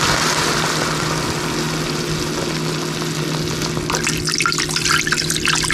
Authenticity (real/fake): real